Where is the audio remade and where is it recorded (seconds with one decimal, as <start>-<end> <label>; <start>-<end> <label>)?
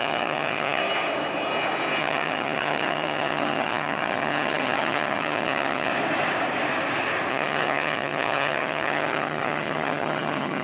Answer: 0.0-0.8 remade; 0.8-2.0 recorded; 2.0-5.9 remade; 5.9-7.3 recorded; 7.3-10.6 remade